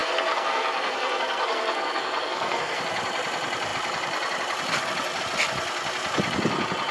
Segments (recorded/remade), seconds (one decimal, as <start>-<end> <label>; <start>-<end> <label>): 0.0-2.8 remade; 2.8-6.9 recorded